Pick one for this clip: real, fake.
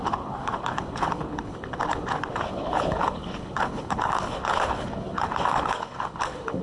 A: fake